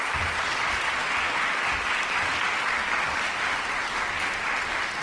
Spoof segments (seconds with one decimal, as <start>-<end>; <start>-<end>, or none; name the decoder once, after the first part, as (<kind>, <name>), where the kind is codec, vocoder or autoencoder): none